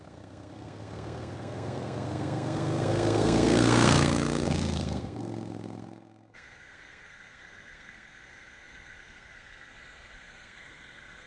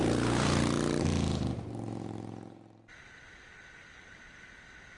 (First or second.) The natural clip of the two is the second